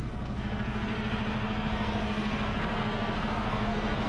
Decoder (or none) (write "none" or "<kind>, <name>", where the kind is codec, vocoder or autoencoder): codec, SNAC